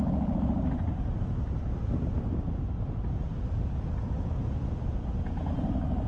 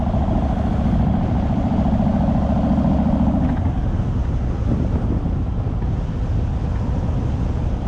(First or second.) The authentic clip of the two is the second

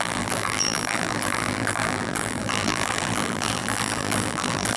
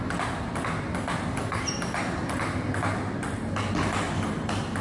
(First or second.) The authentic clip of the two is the second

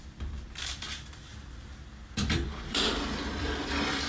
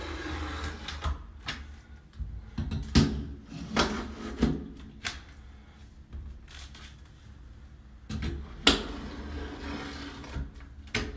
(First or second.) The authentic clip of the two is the second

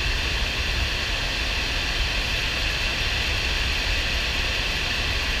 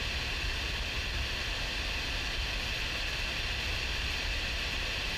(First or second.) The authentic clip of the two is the first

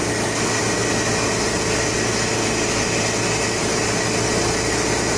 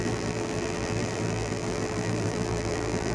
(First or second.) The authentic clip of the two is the first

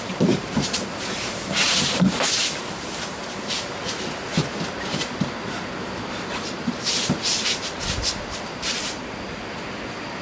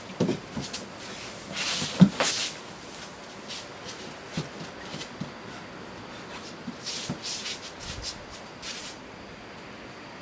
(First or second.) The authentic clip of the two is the second